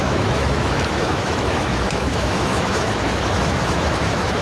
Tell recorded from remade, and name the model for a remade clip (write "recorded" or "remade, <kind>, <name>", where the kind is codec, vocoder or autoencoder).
remade, autoencoder, DAC-VAE